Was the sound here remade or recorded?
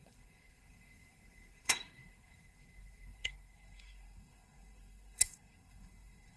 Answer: remade